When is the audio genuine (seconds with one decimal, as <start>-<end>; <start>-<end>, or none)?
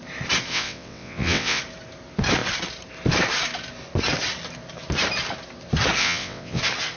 0.0-0.5; 1.6-6.0; 6.6-7.0